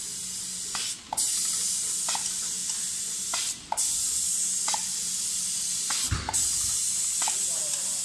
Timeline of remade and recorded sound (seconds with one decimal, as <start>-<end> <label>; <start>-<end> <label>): 0.0-8.0 recorded